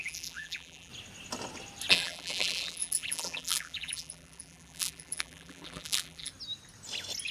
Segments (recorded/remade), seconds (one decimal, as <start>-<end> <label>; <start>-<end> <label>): 0.0-0.9 remade; 0.9-1.9 recorded; 1.9-6.3 remade; 6.3-7.3 recorded